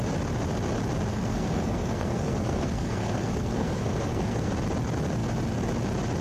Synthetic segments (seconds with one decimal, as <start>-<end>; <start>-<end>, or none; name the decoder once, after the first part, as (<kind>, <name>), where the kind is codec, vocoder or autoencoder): 1.1-4.5 (codec, SNAC)